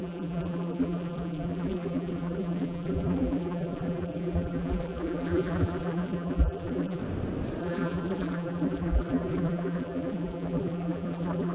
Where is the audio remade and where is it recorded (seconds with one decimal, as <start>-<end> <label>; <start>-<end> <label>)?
0.0-7.0 remade; 7.0-7.6 recorded; 7.6-11.5 remade

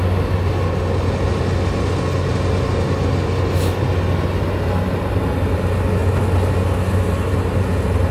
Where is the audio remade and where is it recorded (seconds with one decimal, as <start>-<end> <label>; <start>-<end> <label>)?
0.0-8.1 recorded

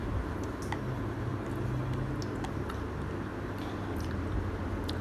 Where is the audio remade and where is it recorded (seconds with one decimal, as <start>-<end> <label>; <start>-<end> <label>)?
0.0-5.0 recorded